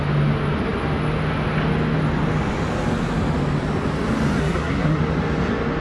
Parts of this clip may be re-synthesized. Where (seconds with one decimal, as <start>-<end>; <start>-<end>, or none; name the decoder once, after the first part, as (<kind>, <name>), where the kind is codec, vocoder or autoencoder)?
4.4-5.0 (codec, SNAC)